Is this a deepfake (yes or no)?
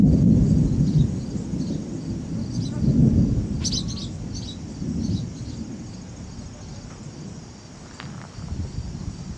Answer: no